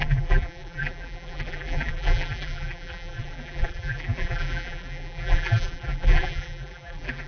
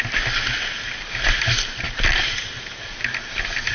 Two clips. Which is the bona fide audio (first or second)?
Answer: second